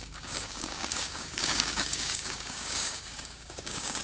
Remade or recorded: remade